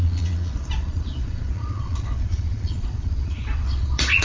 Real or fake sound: fake